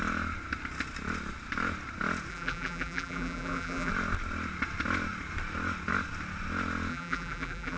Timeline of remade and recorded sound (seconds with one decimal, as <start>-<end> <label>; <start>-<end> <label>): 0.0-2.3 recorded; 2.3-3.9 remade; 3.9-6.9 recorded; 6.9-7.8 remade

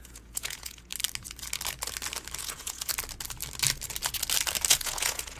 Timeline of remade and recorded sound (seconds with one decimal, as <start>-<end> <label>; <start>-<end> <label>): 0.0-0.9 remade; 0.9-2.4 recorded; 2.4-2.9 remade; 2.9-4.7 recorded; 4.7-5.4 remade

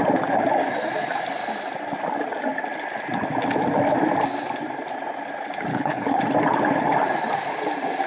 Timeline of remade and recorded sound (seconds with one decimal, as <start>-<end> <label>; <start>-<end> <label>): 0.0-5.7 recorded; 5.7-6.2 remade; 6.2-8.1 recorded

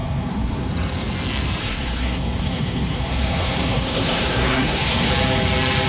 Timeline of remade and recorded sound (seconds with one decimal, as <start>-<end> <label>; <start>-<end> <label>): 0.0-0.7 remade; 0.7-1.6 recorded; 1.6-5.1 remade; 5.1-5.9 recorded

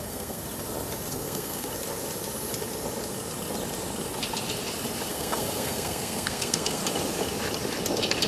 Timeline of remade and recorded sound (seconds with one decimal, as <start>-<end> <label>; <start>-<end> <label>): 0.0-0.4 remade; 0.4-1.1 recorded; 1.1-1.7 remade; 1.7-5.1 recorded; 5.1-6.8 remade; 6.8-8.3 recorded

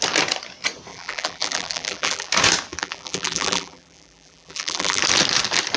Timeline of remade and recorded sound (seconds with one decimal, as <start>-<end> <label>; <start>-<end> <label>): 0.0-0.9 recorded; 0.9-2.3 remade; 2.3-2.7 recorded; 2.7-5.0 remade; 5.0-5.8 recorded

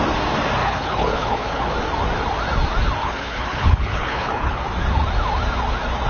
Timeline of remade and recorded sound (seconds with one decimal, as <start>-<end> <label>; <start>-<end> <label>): 0.0-0.6 recorded; 0.6-1.7 remade; 1.7-3.0 recorded; 3.0-4.6 remade; 4.6-6.1 recorded

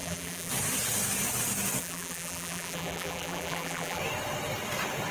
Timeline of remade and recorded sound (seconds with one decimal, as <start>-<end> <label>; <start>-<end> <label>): 0.0-0.5 remade; 0.5-1.8 recorded; 1.8-4.0 remade; 4.0-5.1 recorded